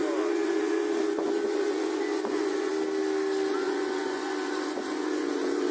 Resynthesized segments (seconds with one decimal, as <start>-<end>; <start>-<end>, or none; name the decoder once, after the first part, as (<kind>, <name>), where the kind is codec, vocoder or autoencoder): 0.0-2.7 (vocoder, Vocos); 3.5-5.7